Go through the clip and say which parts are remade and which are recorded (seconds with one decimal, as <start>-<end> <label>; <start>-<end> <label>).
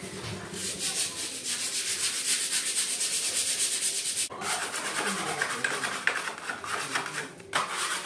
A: 0.0-8.1 recorded